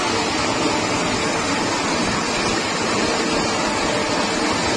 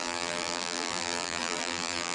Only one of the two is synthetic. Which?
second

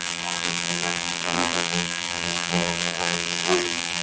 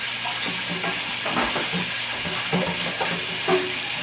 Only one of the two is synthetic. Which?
first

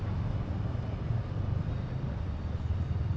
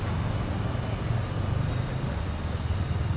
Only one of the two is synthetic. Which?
first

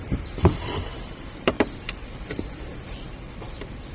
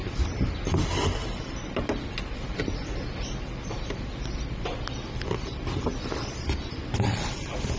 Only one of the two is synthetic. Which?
first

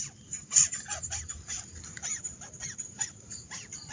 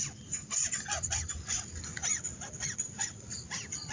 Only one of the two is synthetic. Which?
first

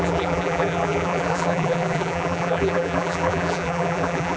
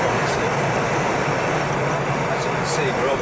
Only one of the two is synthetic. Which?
first